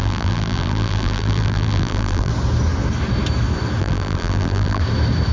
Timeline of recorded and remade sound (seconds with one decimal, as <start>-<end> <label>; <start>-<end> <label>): 0.0-2.3 remade; 2.3-3.8 recorded; 3.8-4.8 remade; 4.8-5.3 recorded